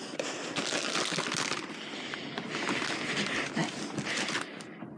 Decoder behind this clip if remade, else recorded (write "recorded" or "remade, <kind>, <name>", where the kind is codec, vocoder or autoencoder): recorded